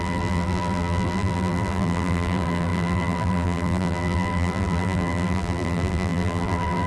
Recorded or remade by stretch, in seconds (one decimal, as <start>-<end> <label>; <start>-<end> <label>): 0.0-6.9 remade